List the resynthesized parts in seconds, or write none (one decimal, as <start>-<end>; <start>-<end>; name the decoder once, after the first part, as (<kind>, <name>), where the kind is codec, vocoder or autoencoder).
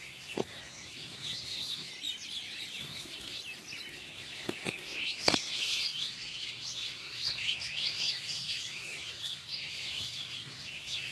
0.0-1.9 (codec, SNAC); 2.8-3.4; 3.9-11.1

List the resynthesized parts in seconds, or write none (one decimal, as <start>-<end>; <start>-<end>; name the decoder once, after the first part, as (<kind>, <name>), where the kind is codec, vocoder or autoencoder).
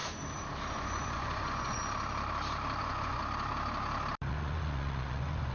0.7-1.8 (vocoder, Vocos); 2.8-3.2; 4.3-5.5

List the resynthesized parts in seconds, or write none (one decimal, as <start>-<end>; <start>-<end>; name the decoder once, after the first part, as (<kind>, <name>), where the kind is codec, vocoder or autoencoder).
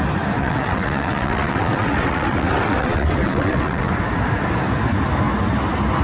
0.4-3.9 (vocoder, WaveNeXt)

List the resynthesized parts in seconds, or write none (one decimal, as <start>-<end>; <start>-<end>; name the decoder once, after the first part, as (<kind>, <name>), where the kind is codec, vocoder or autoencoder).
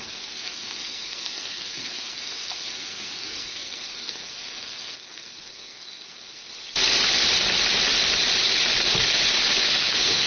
0.0-6.4 (codec, SNAC); 9.8-10.3